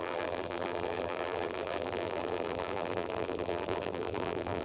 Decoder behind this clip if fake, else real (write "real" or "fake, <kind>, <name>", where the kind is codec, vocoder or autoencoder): fake, vocoder, BigVGAN v2